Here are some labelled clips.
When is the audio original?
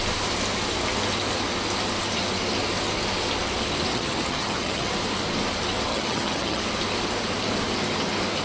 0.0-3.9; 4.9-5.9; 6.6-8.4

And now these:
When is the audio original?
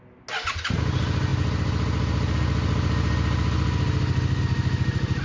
0.0-5.2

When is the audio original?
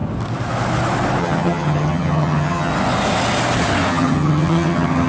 0.0-1.2; 2.7-3.9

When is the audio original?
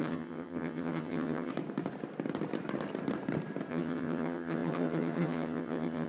1.5-3.7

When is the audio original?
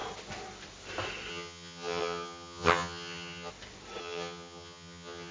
0.0-1.3; 3.5-4.0